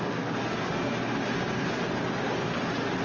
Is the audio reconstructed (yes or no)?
no